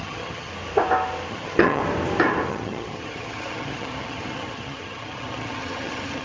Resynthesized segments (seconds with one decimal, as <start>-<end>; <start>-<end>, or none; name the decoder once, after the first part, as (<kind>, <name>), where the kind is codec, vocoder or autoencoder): 0.0-0.5 (vocoder, HiFi-GAN); 1.3-1.8; 2.5-6.2